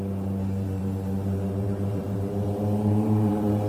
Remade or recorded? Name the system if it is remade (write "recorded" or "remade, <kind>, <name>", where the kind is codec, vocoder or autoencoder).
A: remade, vocoder, BigVGAN v2